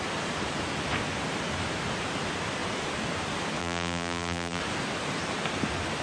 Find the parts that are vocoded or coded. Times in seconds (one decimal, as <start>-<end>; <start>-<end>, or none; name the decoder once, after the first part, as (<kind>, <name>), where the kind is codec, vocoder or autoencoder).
3.6-4.6 (vocoder, BigVGAN v2)